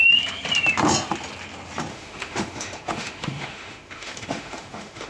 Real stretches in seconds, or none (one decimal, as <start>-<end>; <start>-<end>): 0.0-1.9